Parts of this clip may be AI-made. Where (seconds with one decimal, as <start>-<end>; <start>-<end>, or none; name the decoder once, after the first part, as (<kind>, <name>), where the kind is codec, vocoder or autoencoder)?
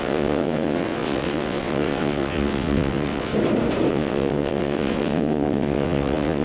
0.0-3.3 (vocoder, WaveNeXt); 3.9-6.4